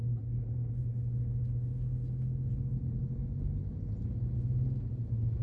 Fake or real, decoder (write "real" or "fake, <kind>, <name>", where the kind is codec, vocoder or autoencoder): real